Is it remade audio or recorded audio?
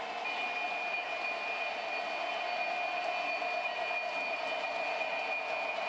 recorded